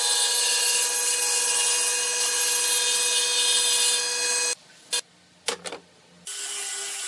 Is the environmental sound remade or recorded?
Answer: recorded